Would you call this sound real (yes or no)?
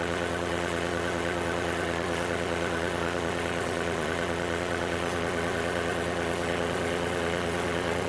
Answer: no